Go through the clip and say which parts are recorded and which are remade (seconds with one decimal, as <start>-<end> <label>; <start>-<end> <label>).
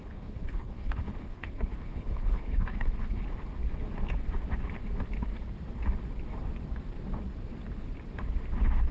0.0-3.2 remade; 3.2-8.9 recorded